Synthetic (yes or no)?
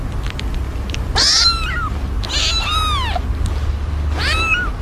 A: no